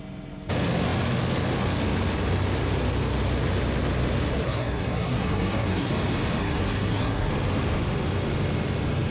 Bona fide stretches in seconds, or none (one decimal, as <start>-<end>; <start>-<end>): 0.0-4.3; 5.9-6.4; 7.3-9.1